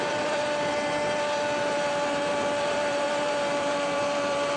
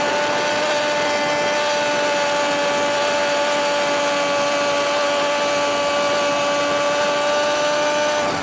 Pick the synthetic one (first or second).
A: first